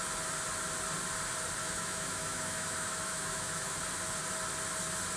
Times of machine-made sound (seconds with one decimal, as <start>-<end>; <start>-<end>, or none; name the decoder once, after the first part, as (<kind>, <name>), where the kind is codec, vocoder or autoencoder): 1.6-3.8 (autoencoder, DAC-VAE)